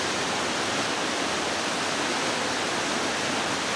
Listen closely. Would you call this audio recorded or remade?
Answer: recorded